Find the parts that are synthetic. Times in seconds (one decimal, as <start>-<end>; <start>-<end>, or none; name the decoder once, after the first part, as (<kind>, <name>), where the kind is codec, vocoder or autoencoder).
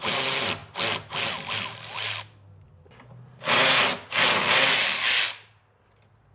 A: none